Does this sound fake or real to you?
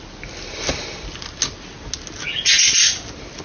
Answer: real